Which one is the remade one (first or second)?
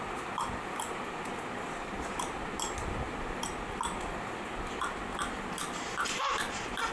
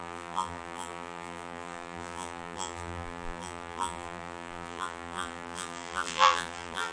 second